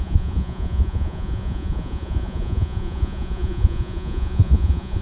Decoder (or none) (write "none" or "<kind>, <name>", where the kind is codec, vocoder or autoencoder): vocoder, Vocos